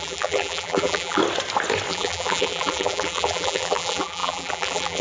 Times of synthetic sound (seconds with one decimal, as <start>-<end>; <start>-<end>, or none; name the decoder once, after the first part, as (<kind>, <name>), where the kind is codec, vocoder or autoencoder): 0.0-1.2 (vocoder, BigVGAN v2); 1.9-5.0